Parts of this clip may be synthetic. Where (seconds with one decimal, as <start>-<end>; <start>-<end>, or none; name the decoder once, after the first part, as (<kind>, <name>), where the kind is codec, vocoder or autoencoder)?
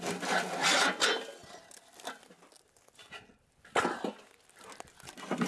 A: none